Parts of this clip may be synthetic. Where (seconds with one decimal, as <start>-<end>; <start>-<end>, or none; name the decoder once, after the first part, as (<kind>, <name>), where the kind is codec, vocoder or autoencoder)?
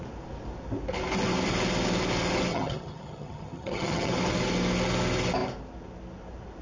2.5-4.1 (vocoder, HiFi-GAN)